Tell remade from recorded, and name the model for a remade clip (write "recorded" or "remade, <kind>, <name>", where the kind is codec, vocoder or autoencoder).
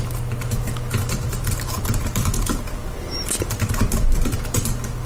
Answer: recorded